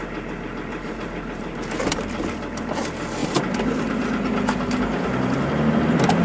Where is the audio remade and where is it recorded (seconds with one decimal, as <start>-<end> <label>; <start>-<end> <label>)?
0.0-0.7 recorded; 0.7-2.2 remade; 2.2-6.2 recorded

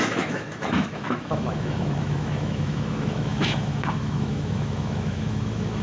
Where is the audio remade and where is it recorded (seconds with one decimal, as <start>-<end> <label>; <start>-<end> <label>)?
0.0-5.8 remade

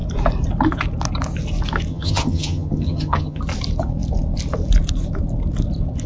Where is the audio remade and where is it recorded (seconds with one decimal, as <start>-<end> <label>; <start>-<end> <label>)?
0.0-1.9 recorded; 1.9-3.4 remade; 3.4-6.1 recorded

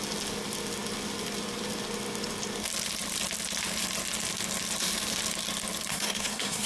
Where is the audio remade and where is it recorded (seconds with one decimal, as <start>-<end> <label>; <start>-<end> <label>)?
0.0-5.9 recorded; 5.9-6.7 remade

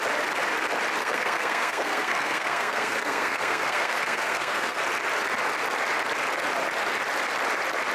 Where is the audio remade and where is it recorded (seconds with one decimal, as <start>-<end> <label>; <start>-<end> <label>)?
0.0-1.0 recorded; 1.0-4.8 remade; 4.8-7.9 recorded

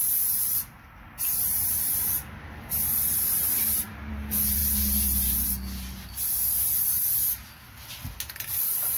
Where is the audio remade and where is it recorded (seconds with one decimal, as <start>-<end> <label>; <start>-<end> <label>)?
0.0-9.0 recorded

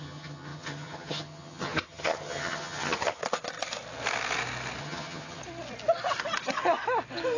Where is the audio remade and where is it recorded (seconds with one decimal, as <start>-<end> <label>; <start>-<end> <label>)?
0.0-3.2 remade; 3.2-4.8 recorded; 4.8-5.4 remade; 5.4-7.4 recorded